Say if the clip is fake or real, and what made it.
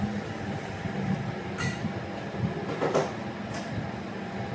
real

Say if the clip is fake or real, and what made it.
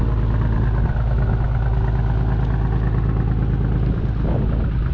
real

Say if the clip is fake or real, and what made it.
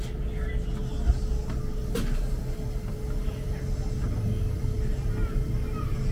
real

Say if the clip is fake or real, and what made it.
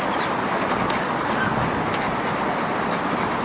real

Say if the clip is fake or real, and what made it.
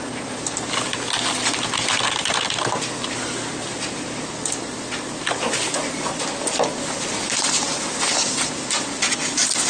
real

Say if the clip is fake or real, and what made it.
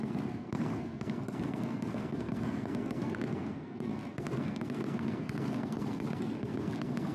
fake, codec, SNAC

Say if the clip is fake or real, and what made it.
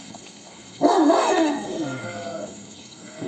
fake, codec, SNAC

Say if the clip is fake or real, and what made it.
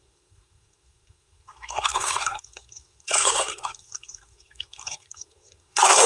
fake, codec, SNAC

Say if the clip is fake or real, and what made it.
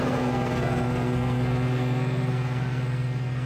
fake, codec, SNAC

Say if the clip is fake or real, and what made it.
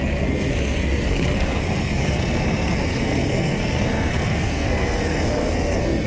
fake, codec, SNAC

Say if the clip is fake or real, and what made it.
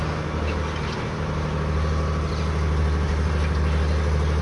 real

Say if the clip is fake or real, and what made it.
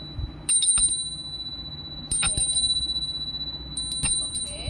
real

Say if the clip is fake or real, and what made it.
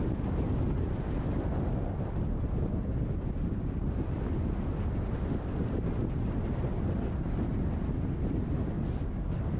real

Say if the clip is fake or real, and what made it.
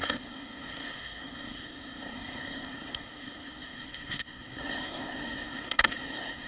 fake, codec, SNAC